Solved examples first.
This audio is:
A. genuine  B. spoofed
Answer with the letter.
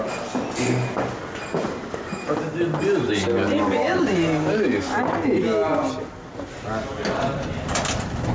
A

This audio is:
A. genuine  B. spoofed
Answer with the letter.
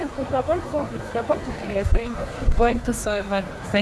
B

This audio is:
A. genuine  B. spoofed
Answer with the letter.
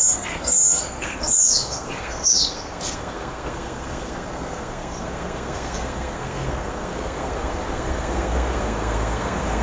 B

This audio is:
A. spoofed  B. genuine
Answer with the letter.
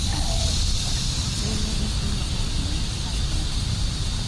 B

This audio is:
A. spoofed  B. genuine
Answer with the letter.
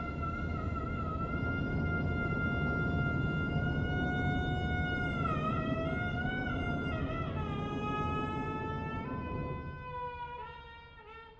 B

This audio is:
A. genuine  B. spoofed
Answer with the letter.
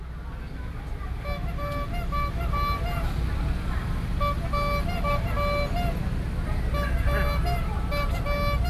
A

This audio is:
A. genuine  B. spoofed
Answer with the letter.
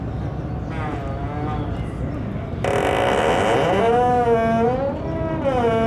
A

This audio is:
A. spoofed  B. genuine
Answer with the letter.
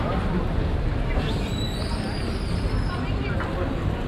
B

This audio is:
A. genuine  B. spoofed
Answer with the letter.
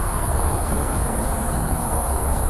B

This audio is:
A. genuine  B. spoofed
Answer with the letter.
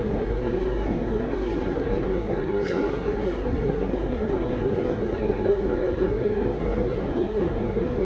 B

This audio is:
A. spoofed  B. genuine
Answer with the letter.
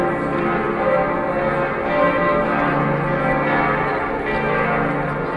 B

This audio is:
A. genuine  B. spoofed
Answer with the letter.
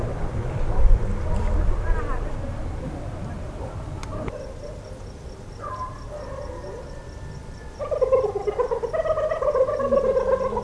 A